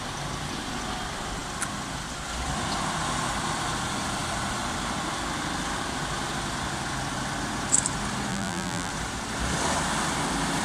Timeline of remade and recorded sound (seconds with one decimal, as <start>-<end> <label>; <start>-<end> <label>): 0.0-8.3 recorded; 8.3-8.9 remade; 8.9-10.6 recorded